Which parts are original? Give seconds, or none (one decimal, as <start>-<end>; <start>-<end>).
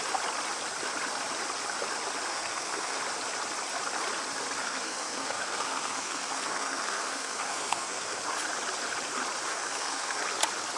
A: 0.0-2.3; 3.0-4.6; 8.2-9.5; 10.2-10.8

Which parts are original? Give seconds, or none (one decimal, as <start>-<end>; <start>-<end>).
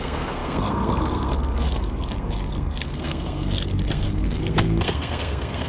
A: none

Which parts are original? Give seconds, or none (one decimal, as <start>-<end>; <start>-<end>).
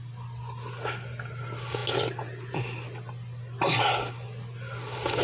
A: 0.0-5.2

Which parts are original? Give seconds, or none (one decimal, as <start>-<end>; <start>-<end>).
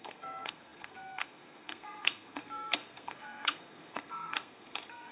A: none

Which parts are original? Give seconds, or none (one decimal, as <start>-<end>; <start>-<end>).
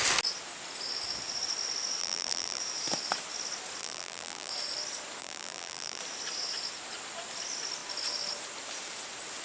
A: 0.0-2.0; 2.6-3.8; 4.5-5.2; 6.0-9.4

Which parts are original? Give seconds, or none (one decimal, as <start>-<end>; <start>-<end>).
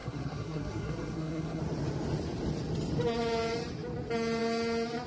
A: 1.6-5.1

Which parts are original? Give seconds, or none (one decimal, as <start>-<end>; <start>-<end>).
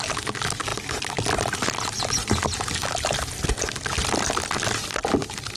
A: 0.0-5.6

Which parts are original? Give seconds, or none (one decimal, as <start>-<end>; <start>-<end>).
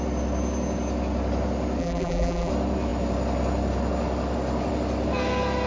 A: 0.0-1.8; 2.5-5.7